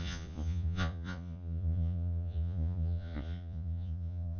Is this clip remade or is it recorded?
remade